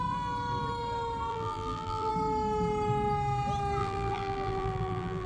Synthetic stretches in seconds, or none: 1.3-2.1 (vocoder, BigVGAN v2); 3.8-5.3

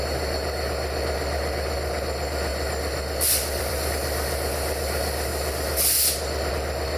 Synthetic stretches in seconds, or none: 2.5-3.9 (vocoder, BigVGAN v2)